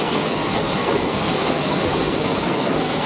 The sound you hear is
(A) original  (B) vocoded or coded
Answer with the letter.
B